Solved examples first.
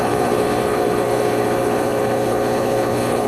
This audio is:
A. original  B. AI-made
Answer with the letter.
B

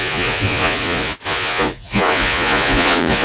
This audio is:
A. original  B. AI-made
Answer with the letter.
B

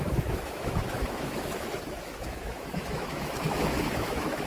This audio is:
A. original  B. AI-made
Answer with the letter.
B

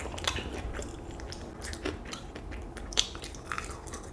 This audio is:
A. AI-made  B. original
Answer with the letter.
B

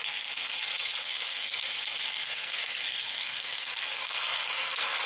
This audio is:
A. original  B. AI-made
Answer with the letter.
B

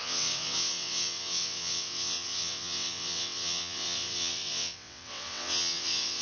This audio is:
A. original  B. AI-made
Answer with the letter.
B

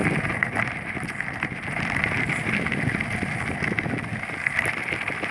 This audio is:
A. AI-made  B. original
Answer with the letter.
B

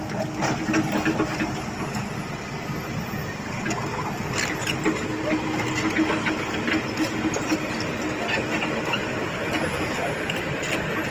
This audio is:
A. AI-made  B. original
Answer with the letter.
B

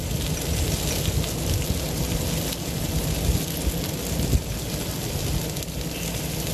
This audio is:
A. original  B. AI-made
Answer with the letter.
A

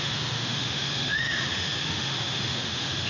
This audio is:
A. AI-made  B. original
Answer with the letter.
A